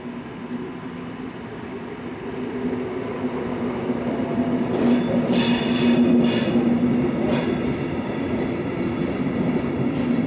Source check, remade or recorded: recorded